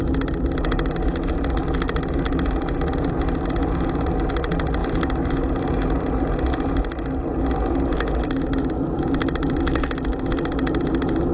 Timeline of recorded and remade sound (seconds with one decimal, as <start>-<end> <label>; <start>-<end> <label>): 0.0-11.3 recorded